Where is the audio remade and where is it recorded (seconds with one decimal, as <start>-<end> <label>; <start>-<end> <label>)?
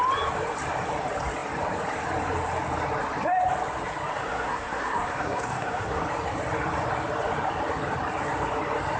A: 0.0-4.1 recorded; 4.1-6.0 remade; 6.0-9.0 recorded